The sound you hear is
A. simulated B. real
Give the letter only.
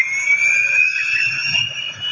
B